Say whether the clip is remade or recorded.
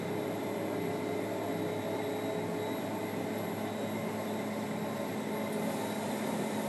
remade